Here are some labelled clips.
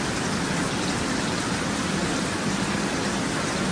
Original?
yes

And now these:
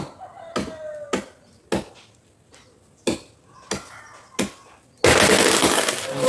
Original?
yes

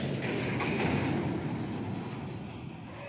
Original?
yes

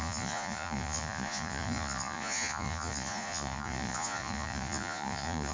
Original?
no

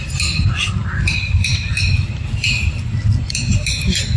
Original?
yes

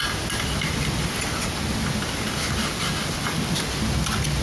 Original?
yes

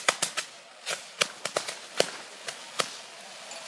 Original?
yes